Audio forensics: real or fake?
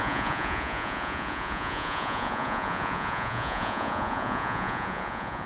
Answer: fake